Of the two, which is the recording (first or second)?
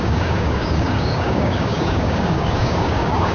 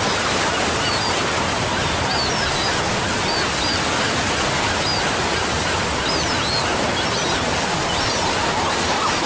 second